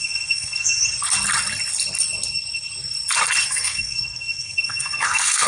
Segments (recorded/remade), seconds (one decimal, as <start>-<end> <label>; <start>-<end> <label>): 0.0-0.8 remade; 0.8-3.5 recorded; 3.5-5.5 remade